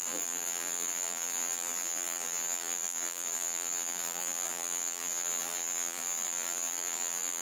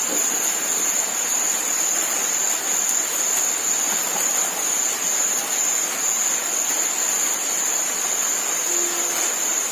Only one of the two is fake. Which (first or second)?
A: first